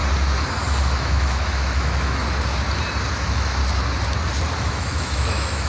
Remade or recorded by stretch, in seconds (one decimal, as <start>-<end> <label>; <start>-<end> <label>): 0.0-0.8 recorded; 0.8-2.2 remade; 2.2-3.2 recorded; 3.2-3.6 remade; 3.6-4.6 recorded; 4.6-5.7 remade